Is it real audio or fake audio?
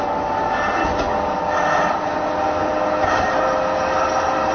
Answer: real